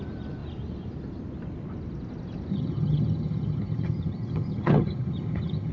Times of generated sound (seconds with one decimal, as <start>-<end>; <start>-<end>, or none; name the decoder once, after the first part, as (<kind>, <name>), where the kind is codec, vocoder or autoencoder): 2.5-5.7 (vocoder, HiFi-GAN)